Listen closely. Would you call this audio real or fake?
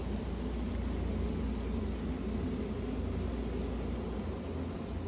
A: real